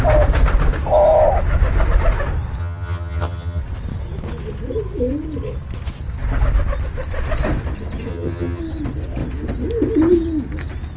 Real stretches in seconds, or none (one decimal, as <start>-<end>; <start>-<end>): 0.0-2.6; 3.6-8.1; 8.6-11.0